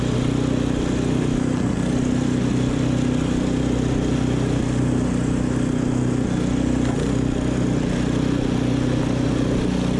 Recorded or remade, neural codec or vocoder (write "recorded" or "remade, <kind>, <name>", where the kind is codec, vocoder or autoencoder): recorded